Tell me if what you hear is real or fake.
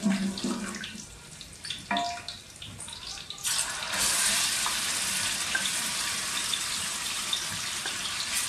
real